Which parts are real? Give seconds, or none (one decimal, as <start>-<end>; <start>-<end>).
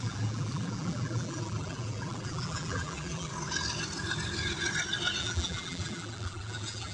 3.3-5.2